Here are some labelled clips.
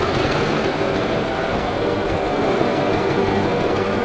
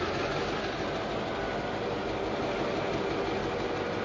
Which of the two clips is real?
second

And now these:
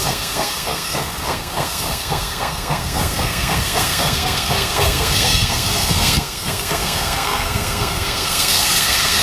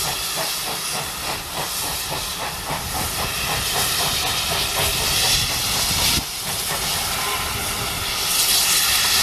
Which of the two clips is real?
second